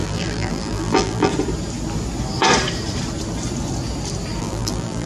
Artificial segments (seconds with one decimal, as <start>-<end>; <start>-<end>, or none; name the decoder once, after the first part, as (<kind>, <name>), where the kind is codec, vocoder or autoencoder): 0.0-1.3 (vocoder, BigVGAN v2); 4.4-5.1